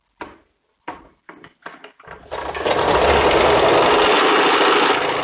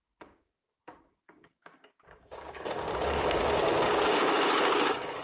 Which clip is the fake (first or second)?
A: second